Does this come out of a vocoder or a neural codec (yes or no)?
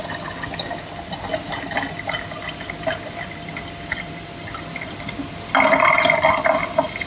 no